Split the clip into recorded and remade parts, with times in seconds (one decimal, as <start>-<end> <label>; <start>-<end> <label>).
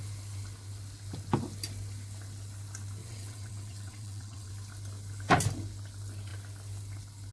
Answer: 0.0-3.0 recorded; 3.0-4.5 remade; 4.5-7.3 recorded